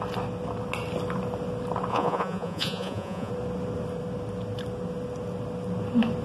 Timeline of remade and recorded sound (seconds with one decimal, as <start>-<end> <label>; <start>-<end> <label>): 0.0-1.9 recorded; 1.9-3.3 remade; 3.3-6.2 recorded